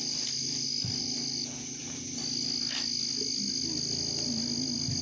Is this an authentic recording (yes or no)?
yes